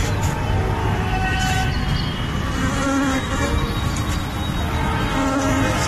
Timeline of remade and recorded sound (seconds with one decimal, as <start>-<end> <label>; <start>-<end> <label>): 0.0-0.8 recorded; 0.8-1.7 remade; 1.7-5.9 recorded